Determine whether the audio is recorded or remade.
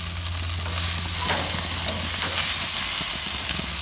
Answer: recorded